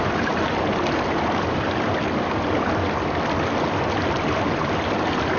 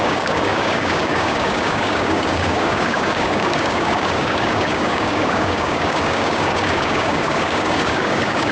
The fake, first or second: second